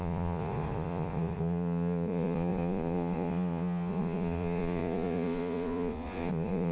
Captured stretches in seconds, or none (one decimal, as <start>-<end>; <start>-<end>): none